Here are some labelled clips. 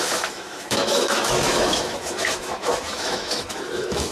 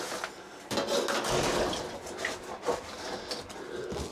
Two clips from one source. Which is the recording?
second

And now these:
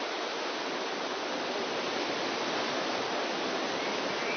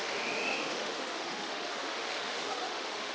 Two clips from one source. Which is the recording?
first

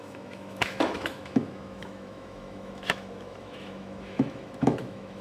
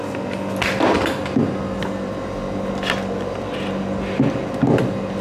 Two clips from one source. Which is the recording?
second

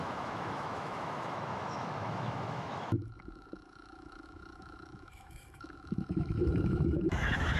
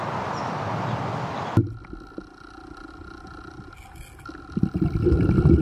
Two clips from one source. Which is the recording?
second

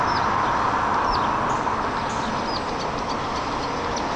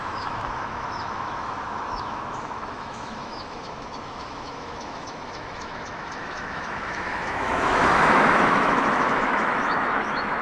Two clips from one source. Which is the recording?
first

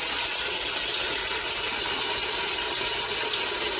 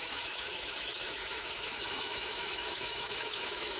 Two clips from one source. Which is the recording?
first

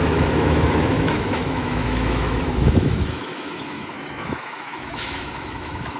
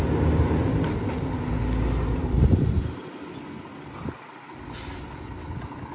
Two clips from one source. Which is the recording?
second